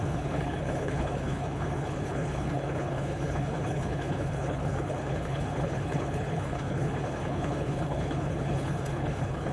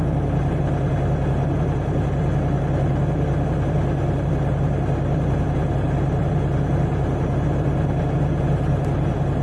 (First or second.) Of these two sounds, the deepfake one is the first